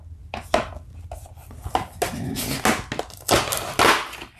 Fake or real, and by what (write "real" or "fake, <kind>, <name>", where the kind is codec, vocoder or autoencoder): real